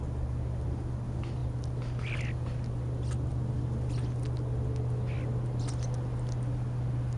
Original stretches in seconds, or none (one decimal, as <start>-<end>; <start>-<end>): 0.0-7.2